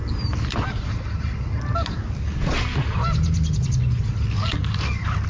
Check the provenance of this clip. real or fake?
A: real